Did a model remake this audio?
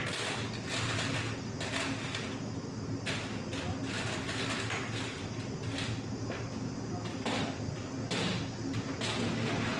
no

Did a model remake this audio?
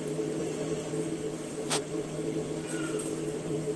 yes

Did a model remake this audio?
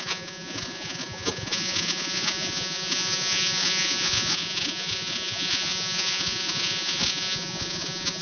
yes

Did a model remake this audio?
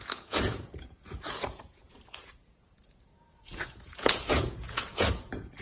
yes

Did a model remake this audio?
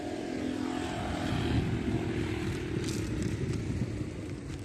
no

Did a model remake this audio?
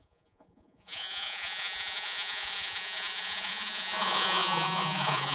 yes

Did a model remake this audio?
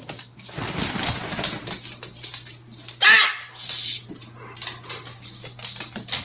no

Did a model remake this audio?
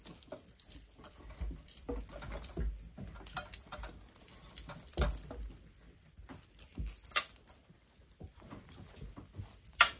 no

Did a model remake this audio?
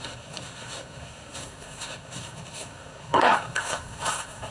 yes